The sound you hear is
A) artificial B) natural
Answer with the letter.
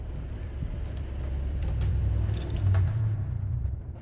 B